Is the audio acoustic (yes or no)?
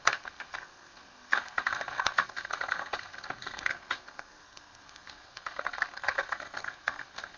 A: no